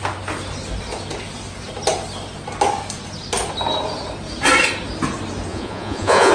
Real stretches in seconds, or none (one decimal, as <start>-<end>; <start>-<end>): 0.0-5.5